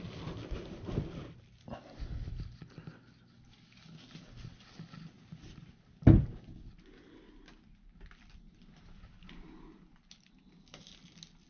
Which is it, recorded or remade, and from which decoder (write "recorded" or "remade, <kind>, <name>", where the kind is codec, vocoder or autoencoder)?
recorded